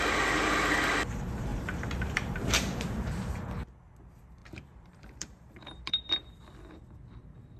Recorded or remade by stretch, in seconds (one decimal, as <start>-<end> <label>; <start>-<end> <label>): 0.0-1.5 recorded; 1.5-3.3 remade; 3.3-4.4 recorded; 4.4-6.1 remade; 6.1-7.6 recorded